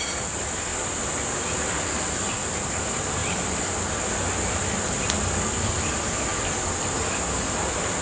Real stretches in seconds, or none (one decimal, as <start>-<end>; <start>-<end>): 0.7-2.3; 3.2-4.5; 6.3-8.0